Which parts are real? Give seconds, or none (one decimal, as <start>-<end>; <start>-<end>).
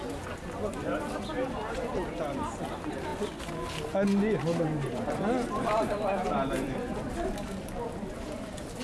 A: 0.0-8.8